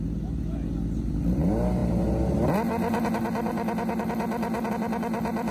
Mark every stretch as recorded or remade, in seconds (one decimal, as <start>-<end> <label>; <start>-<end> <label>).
0.0-5.5 recorded